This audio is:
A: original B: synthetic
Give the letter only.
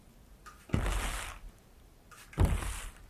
A